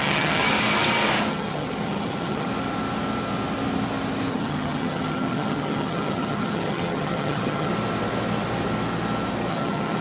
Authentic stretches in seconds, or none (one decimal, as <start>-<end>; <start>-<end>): 0.4-1.3; 2.5-4.3; 7.7-9.5

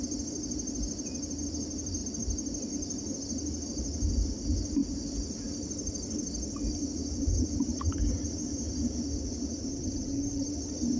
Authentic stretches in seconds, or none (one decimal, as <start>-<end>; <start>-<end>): 0.0-9.7; 10.5-11.0

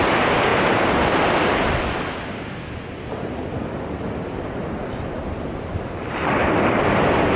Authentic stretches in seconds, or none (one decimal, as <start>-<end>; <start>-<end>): 0.0-7.4

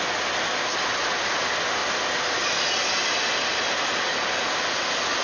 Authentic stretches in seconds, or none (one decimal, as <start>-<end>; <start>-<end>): 0.0-5.2

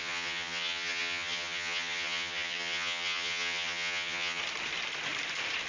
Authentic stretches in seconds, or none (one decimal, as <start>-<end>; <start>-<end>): 4.4-5.7

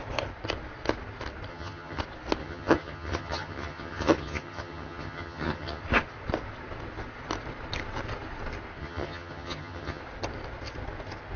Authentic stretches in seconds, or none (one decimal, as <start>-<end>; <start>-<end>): 0.0-1.5; 2.0-2.4; 5.8-8.8; 10.0-11.4

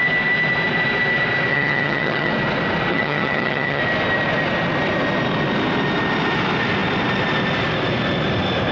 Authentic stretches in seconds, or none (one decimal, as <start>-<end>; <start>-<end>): 0.0-1.5; 2.3-2.9; 3.8-8.7

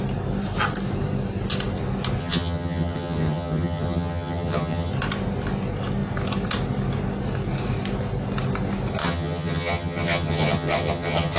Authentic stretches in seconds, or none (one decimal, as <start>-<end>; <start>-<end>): 0.0-2.2; 4.9-9.0